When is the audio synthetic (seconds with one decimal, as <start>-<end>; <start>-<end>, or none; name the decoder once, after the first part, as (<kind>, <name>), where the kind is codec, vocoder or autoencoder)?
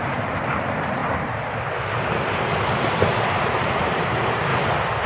0.0-1.0 (vocoder, BigVGAN v2); 3.3-4.5